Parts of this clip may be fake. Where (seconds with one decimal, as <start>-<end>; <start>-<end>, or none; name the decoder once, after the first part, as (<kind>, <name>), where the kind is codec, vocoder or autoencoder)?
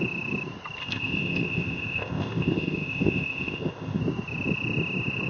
0.8-4.0 (codec, ZipCodec)